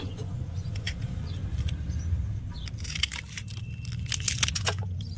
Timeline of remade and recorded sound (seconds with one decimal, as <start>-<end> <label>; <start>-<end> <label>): 0.0-1.4 remade; 1.4-4.5 recorded; 4.5-5.2 remade